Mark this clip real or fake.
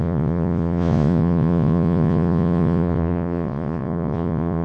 fake